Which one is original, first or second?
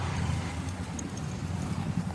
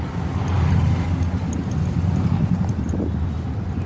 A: second